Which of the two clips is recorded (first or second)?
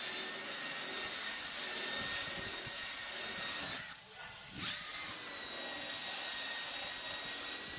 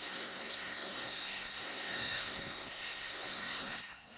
first